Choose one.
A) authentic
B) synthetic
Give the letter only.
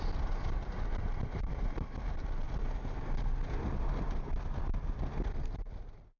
A